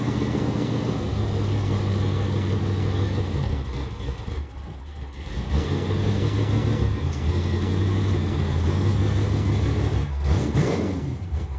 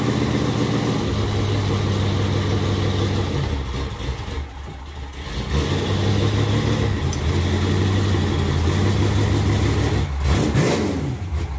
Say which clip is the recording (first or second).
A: second